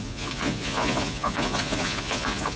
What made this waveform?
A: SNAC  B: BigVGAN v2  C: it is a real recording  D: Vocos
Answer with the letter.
D